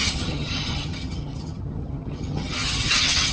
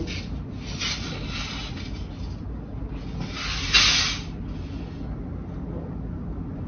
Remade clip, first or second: first